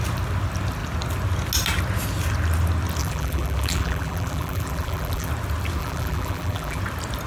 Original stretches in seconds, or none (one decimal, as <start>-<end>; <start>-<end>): 0.0-3.0; 5.3-5.8; 6.8-7.3